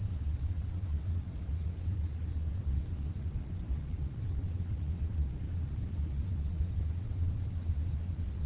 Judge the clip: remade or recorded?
remade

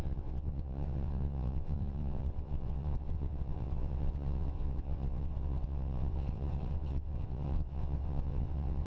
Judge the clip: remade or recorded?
remade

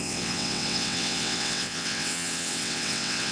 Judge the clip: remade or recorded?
remade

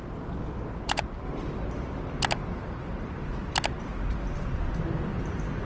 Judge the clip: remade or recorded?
recorded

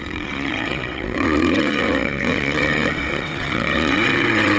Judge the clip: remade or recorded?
remade